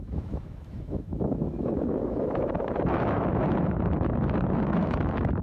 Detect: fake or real fake